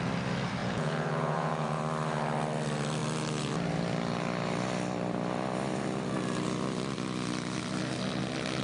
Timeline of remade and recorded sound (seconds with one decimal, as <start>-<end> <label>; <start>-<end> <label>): 0.0-0.6 recorded; 0.6-1.8 remade; 1.8-8.6 recorded